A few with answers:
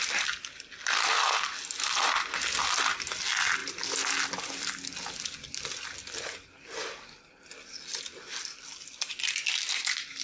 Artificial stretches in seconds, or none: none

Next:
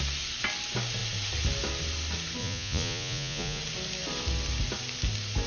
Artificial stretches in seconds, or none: 2.4-3.6 (vocoder, Vocos)

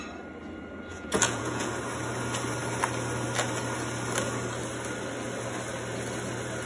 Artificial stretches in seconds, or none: 0.9-1.7 (vocoder, Vocos)

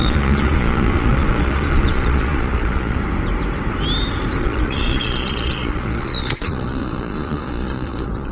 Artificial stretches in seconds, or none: 0.0-3.0 (vocoder, Vocos); 4.4-8.3

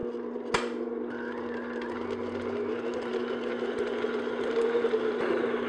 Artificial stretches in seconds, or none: none

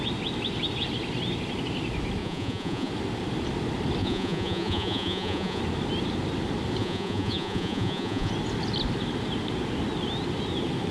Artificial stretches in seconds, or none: 2.2-2.9 (vocoder, Vocos); 4.0-5.6; 6.8-8.3

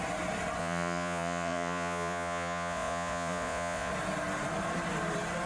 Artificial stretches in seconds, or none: 0.6-3.9 (vocoder, Vocos)

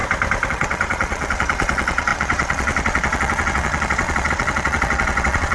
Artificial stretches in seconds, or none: 0.5-5.5 (vocoder, Vocos)